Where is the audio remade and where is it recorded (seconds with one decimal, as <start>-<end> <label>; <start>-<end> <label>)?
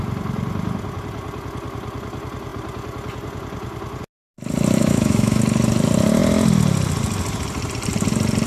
0.0-4.8 recorded; 4.8-5.4 remade; 5.4-8.5 recorded